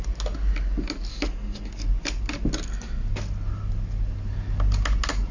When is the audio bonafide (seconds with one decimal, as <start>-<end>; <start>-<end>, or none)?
0.0-1.1; 1.7-5.3